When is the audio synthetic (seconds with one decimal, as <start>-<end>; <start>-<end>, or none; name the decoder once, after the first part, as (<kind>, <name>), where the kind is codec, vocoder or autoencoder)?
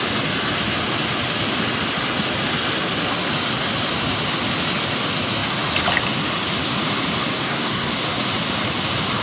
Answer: 7.3-7.9 (codec, SNAC)